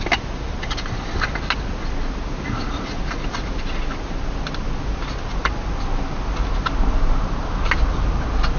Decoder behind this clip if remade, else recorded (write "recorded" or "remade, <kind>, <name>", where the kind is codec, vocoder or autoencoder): recorded